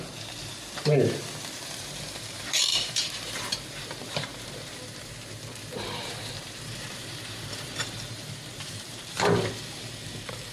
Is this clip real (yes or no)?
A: no